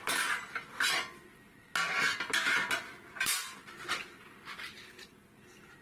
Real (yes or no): yes